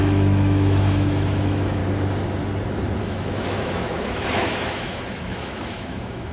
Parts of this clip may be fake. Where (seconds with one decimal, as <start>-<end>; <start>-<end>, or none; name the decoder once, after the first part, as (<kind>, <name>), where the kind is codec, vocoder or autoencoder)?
0.0-1.8 (autoencoder, DAC-VAE); 3.0-6.3

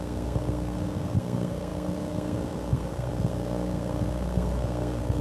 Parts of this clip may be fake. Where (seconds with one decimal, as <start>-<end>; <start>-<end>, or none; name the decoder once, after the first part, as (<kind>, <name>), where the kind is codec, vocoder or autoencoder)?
0.0-5.2 (codec, SNAC)

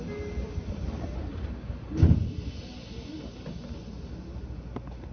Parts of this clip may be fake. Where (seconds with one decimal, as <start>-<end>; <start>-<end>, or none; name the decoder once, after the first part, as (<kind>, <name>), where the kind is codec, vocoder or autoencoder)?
none

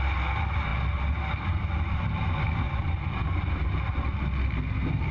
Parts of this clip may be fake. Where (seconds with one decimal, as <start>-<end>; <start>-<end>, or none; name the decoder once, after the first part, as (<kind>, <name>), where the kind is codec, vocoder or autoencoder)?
none

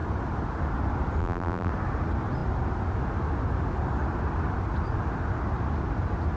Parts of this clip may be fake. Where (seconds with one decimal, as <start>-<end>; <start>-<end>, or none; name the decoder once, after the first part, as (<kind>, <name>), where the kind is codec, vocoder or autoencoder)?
1.2-1.7 (vocoder, BigVGAN v2)

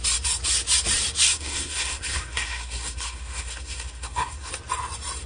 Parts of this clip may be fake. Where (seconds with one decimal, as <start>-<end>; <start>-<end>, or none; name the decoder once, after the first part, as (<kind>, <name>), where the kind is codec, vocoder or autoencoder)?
1.3-4.5 (codec, SNAC)

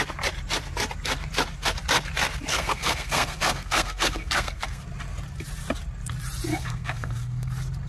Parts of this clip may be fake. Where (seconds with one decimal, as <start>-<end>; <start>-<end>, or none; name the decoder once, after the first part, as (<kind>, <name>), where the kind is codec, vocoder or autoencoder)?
2.5-4.8 (codec, SNAC); 6.5-7.5

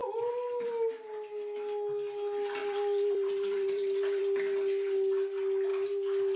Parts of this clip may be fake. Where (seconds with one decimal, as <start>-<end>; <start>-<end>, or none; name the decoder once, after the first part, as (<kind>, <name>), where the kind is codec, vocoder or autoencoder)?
0.0-0.7 (vocoder, BigVGAN v2); 2.6-4.2